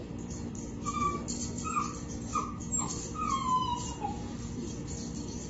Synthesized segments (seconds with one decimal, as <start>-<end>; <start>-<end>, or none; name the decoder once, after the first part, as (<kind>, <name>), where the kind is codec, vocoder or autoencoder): 0.0-2.3 (vocoder, BigVGAN v2); 4.6-5.5